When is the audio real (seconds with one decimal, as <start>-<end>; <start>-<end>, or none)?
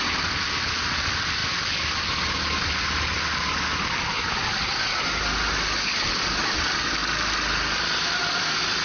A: 0.0-8.8